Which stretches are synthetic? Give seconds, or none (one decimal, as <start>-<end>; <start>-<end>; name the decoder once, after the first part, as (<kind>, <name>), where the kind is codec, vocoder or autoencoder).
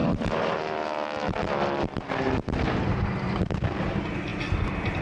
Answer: 2.9-5.0 (vocoder, BigVGAN v2)